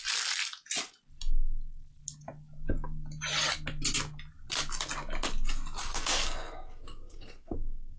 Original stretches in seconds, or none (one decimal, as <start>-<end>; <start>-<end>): 0.0-5.8